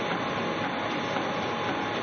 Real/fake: real